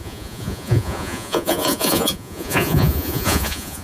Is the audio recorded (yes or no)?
no